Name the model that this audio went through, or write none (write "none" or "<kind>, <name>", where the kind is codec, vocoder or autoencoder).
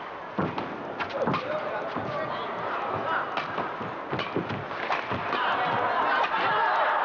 none